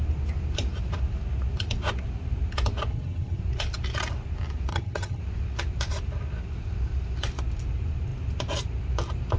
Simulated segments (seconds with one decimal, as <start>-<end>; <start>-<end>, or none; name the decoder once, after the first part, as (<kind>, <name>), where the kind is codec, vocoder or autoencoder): 2.9-3.4 (vocoder, HiFi-GAN); 4.7-5.2